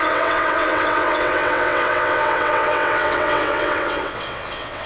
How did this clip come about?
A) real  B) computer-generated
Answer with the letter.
B